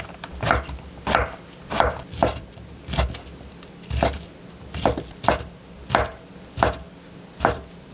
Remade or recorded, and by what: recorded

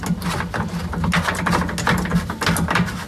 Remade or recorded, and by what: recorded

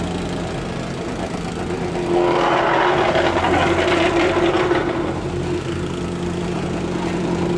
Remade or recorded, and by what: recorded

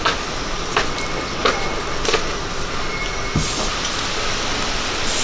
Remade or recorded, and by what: recorded